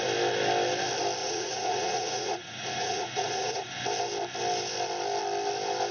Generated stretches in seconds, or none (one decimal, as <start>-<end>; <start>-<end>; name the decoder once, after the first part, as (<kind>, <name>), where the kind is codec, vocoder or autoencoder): 1.2-3.7 (vocoder, Vocos)